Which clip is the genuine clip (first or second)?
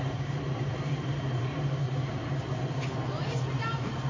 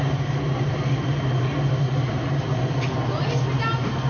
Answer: second